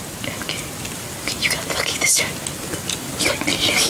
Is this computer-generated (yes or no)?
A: no